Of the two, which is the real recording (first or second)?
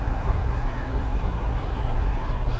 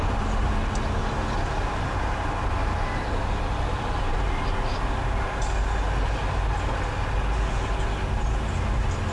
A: second